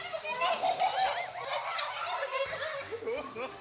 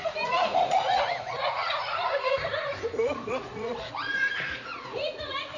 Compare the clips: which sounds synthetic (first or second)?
second